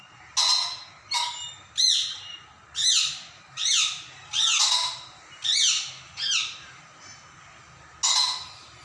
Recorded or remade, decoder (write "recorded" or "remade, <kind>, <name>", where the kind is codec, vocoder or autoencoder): recorded